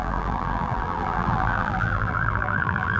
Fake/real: fake